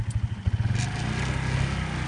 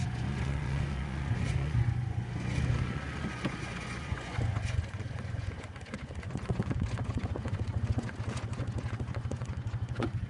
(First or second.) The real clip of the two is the first